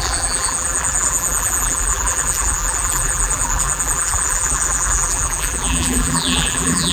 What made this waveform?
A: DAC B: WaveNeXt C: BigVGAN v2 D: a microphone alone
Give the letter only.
C